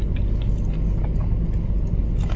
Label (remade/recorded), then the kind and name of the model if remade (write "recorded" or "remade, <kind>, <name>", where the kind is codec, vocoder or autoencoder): recorded